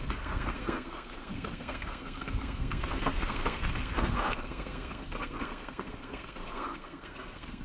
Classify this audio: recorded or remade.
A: remade